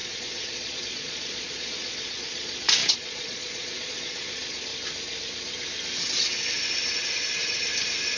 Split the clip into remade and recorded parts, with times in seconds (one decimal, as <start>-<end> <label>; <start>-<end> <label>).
0.0-4.7 remade; 4.7-8.2 recorded